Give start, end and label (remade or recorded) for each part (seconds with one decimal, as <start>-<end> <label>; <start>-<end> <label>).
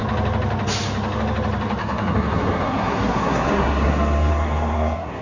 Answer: 0.0-1.8 recorded; 1.8-5.2 remade